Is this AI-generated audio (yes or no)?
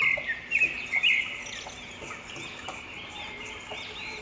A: no